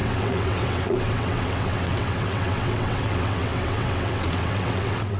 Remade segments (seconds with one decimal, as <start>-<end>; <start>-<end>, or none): 0.0-5.2